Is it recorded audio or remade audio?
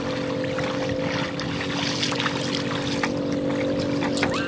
recorded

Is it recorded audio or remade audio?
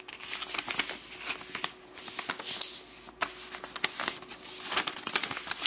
recorded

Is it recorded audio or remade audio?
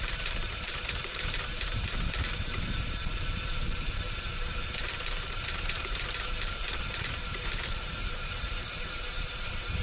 remade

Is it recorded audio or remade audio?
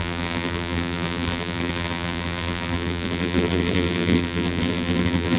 remade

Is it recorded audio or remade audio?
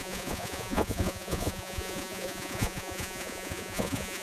remade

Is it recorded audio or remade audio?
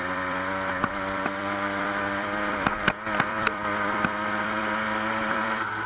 remade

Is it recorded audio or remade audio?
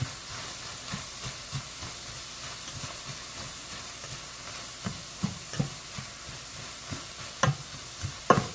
recorded